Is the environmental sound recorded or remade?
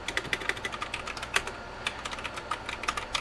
recorded